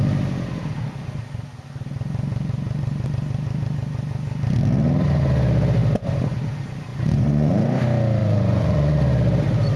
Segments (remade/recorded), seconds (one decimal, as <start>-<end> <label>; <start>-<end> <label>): 0.0-6.9 recorded; 6.9-7.8 remade; 7.8-8.2 recorded; 8.2-9.0 remade; 9.0-9.8 recorded